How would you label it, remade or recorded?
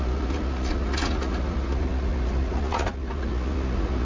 remade